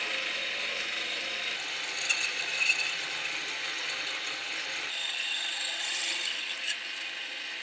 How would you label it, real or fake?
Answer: real